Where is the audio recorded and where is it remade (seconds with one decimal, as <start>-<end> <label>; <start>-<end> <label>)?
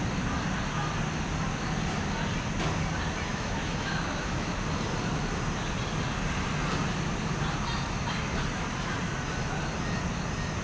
0.0-3.3 recorded; 3.3-4.5 remade; 4.5-10.6 recorded